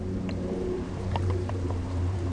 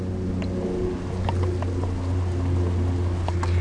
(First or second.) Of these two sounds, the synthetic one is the first